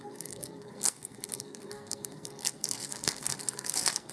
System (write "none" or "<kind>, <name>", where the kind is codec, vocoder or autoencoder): codec, SNAC